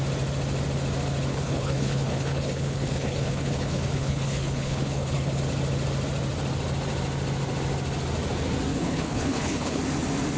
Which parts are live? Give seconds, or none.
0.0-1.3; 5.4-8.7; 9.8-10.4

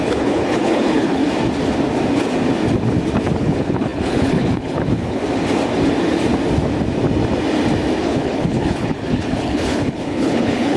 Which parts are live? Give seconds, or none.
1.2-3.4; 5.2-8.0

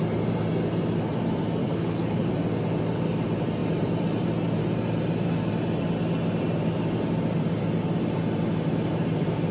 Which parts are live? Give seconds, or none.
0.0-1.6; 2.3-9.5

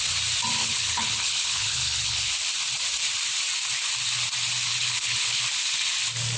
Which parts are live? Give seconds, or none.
0.0-0.6; 2.3-4.7; 5.4-6.4

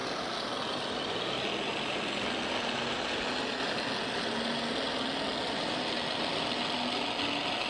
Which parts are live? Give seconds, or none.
0.0-7.7

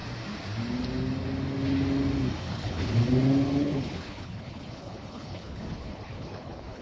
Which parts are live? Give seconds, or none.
0.0-2.5; 2.9-3.6

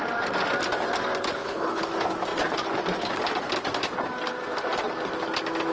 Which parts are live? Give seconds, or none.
0.0-1.3; 1.9-5.7